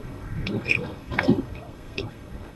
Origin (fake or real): fake